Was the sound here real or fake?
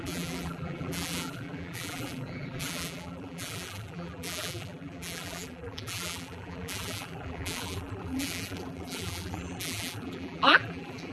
fake